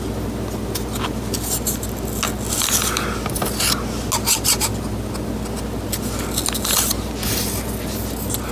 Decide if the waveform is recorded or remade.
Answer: recorded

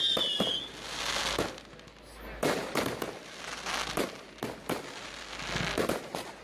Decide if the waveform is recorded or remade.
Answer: recorded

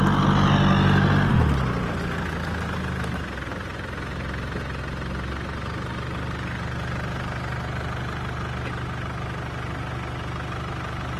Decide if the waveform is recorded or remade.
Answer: recorded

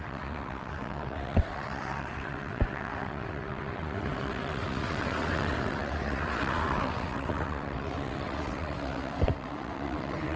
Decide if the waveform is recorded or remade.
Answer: remade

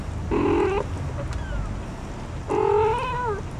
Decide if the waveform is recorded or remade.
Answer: recorded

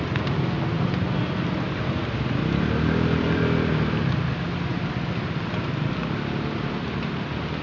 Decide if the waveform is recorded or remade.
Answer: recorded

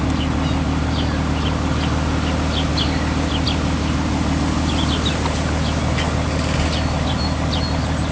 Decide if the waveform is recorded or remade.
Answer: recorded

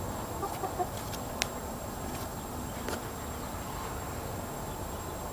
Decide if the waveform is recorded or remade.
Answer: remade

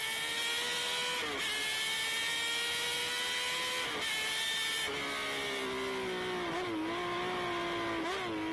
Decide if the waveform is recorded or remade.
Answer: recorded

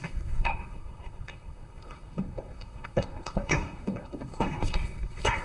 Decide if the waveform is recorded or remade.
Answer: remade